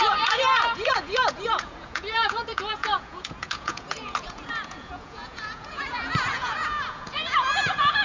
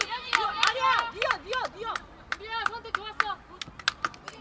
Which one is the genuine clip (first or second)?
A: second